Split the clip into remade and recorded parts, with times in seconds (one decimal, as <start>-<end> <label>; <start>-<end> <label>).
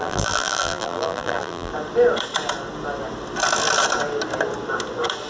0.0-1.7 remade; 1.7-5.3 recorded